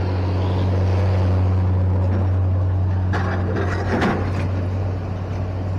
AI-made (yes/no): no